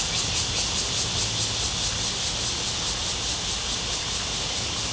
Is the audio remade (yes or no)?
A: no